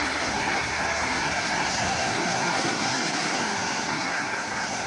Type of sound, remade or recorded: remade